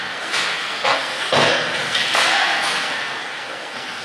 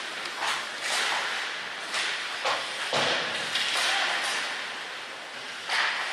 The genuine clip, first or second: second